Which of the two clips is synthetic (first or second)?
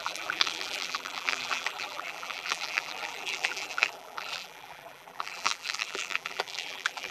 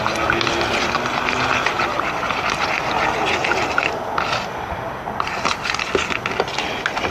first